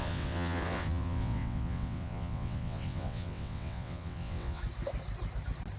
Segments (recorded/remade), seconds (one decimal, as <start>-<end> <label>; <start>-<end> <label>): 0.0-4.6 remade; 4.6-5.8 recorded